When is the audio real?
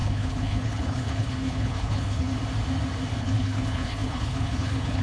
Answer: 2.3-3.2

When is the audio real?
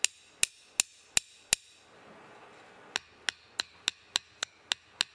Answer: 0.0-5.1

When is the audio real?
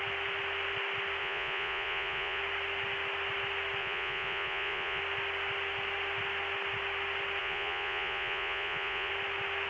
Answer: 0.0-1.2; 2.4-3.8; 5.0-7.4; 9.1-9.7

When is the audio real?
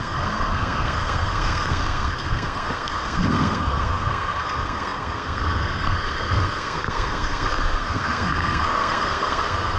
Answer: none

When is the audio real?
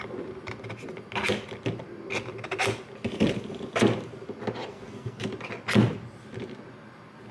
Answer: 0.0-4.7; 5.2-7.3